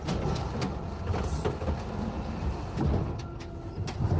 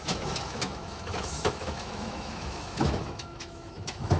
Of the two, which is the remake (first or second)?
second